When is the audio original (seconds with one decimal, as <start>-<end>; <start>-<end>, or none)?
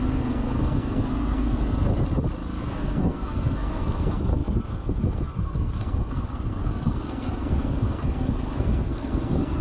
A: 1.9-2.6